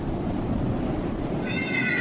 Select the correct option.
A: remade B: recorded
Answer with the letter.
B